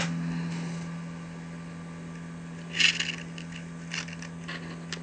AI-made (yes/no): no